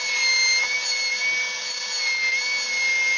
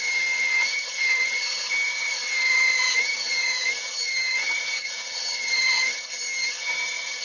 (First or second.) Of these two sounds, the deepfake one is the second